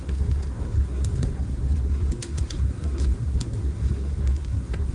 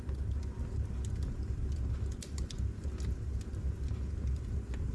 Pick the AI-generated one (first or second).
first